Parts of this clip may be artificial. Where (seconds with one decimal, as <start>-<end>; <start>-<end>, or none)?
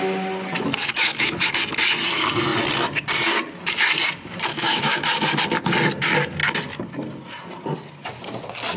0.9-1.5; 4.5-5.4